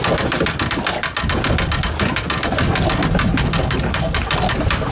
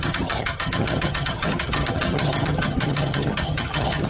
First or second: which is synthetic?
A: second